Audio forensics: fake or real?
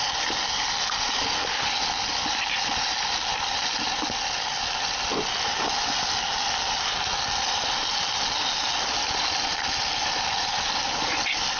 real